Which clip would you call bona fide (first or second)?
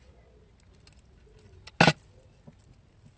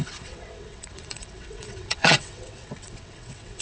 first